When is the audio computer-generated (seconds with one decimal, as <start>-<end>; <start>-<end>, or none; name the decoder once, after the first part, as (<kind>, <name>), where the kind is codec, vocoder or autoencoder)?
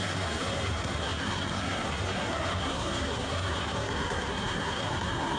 0.0-5.4 (codec, SNAC)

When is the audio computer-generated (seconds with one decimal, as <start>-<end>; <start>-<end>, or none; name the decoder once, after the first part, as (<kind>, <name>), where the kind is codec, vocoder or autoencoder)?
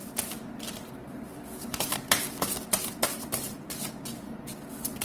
1.0-4.0 (vocoder, BigVGAN v2)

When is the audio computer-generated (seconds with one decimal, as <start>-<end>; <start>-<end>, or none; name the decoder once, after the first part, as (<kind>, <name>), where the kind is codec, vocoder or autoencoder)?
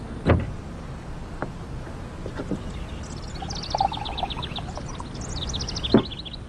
none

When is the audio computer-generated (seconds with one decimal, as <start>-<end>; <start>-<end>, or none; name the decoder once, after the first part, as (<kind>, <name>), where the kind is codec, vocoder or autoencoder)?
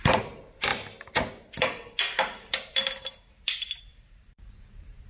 0.0-0.7 (vocoder, BigVGAN v2); 3.8-5.1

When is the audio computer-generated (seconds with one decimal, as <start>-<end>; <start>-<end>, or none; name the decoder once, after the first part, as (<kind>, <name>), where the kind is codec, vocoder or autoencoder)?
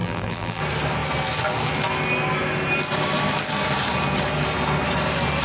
0.0-0.6 (vocoder, BigVGAN v2)